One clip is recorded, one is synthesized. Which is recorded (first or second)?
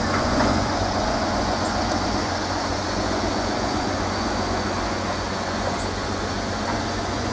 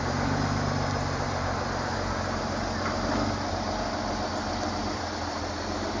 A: second